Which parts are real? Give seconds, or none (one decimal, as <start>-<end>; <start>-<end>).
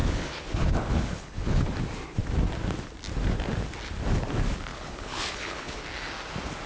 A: 1.7-4.7; 5.8-6.7